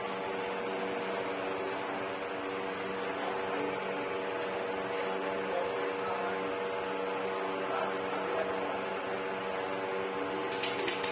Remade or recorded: recorded